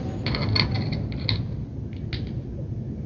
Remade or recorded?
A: recorded